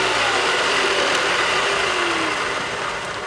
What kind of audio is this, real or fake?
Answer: real